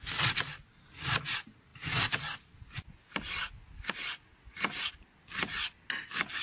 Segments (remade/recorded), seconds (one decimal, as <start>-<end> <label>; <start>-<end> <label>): 0.0-6.4 recorded